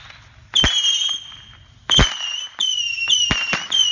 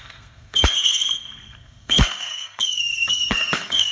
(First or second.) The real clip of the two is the first